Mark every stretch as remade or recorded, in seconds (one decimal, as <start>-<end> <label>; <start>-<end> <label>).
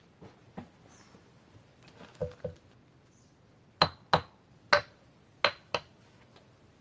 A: 0.0-6.8 recorded